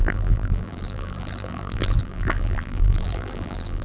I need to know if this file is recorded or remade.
remade